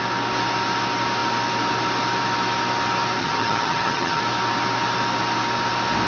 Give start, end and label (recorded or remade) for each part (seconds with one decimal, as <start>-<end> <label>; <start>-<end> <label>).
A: 0.0-3.2 recorded; 3.2-4.2 remade; 4.2-6.1 recorded